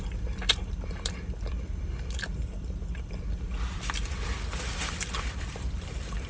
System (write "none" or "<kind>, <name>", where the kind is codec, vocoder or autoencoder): none